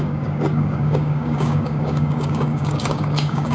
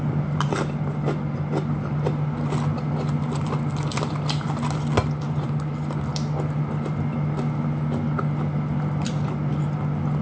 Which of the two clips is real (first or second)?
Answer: second